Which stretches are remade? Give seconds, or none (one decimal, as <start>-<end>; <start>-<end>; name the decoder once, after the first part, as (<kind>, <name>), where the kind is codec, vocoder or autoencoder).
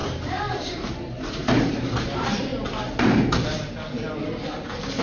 0.0-2.5 (vocoder, BigVGAN v2)